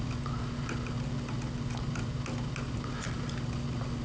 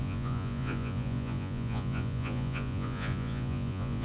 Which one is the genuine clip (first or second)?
first